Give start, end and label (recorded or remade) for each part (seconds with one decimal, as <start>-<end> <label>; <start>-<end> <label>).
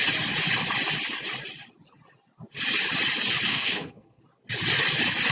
0.0-3.5 recorded; 3.5-4.2 remade; 4.2-5.3 recorded